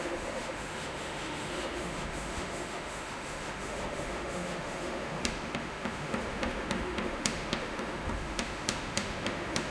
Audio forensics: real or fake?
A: fake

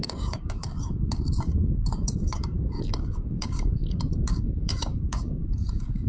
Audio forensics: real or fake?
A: fake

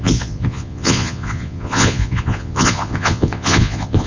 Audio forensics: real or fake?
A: fake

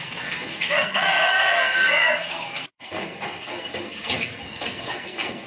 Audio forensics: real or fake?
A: fake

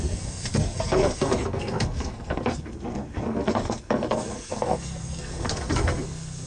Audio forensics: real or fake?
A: fake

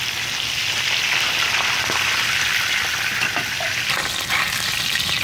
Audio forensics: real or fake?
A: real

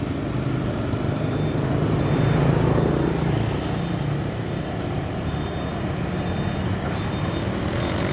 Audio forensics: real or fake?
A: real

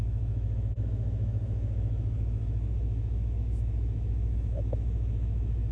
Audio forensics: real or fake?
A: fake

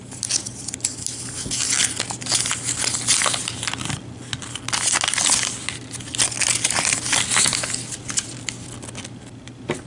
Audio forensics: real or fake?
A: real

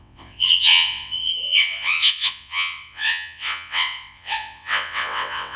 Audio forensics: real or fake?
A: fake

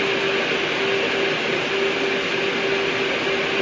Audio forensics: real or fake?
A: real